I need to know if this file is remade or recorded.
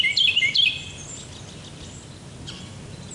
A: recorded